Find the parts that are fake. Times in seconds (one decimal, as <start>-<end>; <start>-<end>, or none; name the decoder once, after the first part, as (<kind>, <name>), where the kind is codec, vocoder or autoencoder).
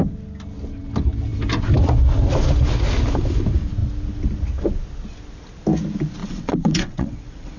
6.2-7.6 (vocoder, WaveNeXt)